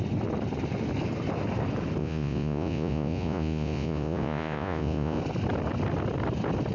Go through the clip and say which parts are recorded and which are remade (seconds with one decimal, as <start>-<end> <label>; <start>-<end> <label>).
0.0-2.0 recorded; 2.0-5.2 remade; 5.2-6.7 recorded